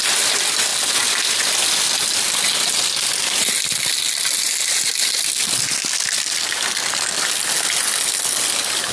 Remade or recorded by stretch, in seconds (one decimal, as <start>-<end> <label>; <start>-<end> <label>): 0.0-8.9 recorded